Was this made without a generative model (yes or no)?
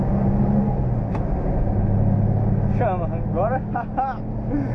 yes